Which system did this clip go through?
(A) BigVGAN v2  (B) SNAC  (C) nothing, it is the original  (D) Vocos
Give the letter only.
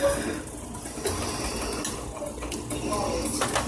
C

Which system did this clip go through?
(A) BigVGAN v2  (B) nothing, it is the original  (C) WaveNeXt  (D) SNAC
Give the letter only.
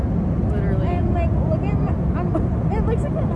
B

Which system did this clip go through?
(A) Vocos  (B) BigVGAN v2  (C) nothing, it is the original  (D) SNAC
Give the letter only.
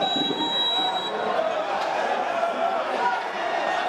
B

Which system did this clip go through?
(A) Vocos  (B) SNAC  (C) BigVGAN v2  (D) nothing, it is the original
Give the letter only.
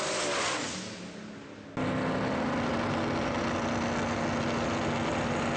D